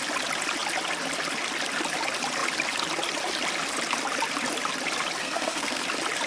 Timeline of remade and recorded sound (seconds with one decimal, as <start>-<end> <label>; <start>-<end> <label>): 0.0-5.2 recorded; 5.2-5.8 remade; 5.8-6.3 recorded